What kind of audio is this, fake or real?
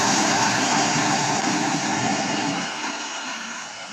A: fake